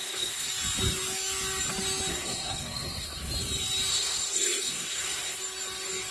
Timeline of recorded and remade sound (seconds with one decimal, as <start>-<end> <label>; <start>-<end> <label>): 0.0-0.5 remade; 0.5-2.1 recorded; 2.1-3.3 remade; 3.3-3.9 recorded; 3.9-5.4 remade; 5.4-6.1 recorded